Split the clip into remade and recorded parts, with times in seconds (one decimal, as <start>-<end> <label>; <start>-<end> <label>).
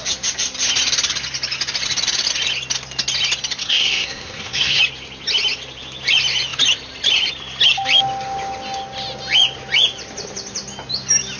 0.0-3.6 recorded; 3.6-4.8 remade; 4.8-11.4 recorded